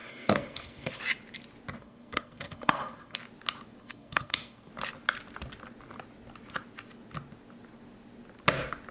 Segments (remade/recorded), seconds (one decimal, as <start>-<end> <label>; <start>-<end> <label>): 0.0-1.0 remade; 1.0-1.8 recorded; 1.8-3.2 remade; 3.2-3.8 recorded; 3.8-4.7 remade; 4.7-8.9 recorded